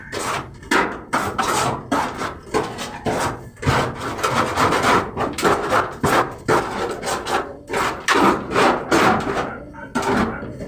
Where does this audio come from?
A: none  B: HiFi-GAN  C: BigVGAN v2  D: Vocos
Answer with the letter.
A